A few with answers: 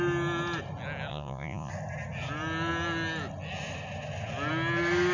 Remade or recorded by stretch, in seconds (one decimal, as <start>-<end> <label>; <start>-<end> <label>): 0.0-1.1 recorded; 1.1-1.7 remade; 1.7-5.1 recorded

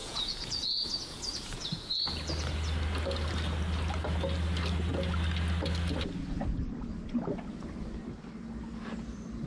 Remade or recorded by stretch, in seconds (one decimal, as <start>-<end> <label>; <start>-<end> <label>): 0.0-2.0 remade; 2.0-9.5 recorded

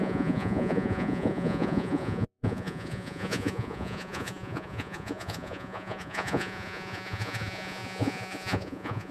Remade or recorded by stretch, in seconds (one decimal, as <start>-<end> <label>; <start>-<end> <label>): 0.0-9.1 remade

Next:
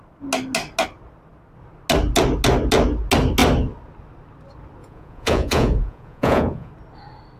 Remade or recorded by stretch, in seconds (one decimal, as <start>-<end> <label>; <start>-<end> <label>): 0.0-4.8 recorded; 4.8-6.7 remade; 6.7-7.4 recorded